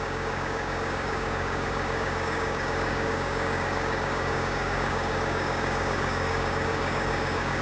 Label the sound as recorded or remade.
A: remade